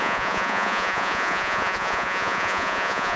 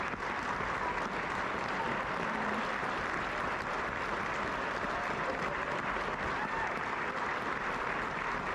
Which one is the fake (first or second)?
first